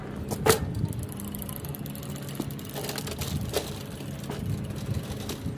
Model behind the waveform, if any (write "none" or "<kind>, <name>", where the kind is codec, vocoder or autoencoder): none